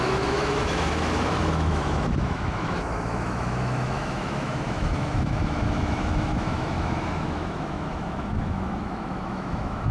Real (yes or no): no